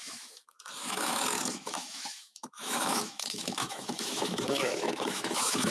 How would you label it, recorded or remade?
remade